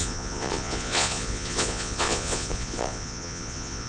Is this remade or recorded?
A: remade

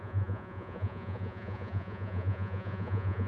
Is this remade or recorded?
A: remade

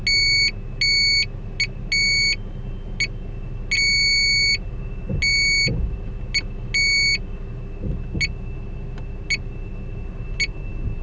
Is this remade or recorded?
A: recorded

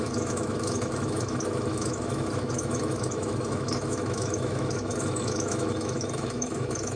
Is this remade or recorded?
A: remade